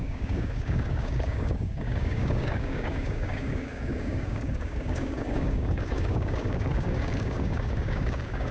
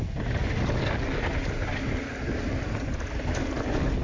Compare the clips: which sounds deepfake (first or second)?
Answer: first